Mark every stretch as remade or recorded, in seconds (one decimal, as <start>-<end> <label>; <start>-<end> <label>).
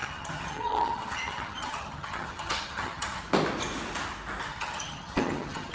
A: 0.0-3.2 remade; 3.2-4.5 recorded; 4.5-5.7 remade